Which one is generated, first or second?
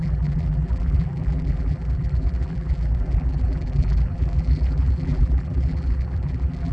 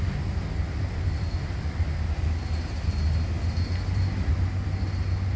first